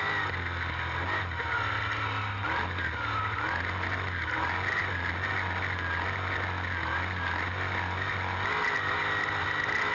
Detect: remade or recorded recorded